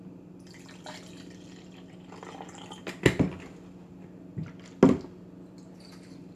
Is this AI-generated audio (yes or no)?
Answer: no